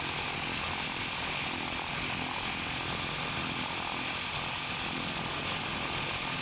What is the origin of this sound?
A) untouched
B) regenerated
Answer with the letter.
A